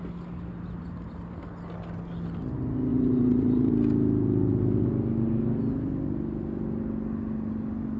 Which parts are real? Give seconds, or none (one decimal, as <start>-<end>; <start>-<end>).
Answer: 0.0-2.9; 3.7-8.0